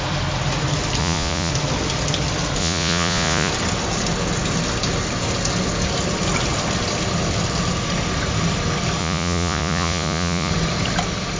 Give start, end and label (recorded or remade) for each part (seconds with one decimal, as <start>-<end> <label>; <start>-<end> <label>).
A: 0.0-1.0 recorded; 1.0-1.5 remade; 1.5-2.6 recorded; 2.6-3.5 remade; 3.5-9.0 recorded; 9.0-10.5 remade; 10.5-11.4 recorded